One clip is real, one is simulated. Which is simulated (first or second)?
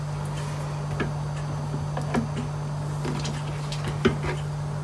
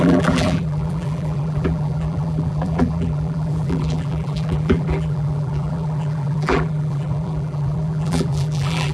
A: second